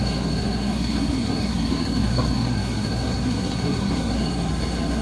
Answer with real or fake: fake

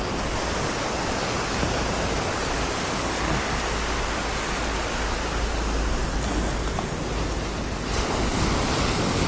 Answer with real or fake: real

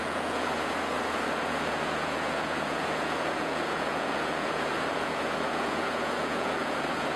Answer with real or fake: fake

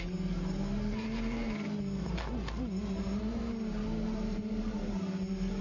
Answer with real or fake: fake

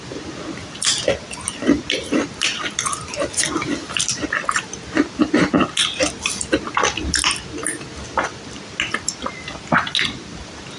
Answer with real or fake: real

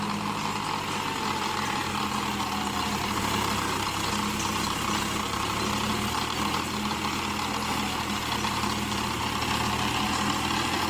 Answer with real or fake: real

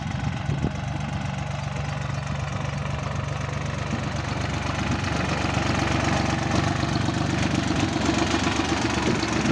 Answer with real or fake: real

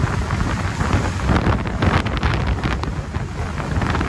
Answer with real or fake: real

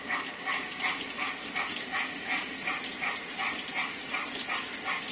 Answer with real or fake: real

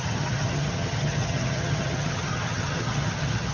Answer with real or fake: fake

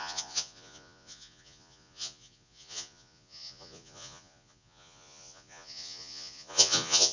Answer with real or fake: fake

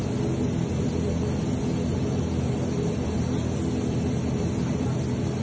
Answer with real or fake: real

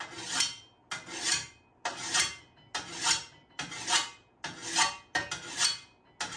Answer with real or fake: real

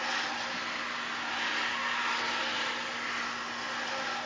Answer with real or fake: real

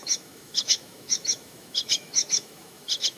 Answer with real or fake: fake